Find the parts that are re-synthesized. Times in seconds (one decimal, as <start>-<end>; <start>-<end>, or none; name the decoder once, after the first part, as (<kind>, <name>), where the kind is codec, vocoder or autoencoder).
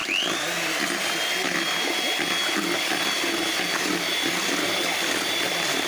3.5-5.9 (vocoder, BigVGAN v2)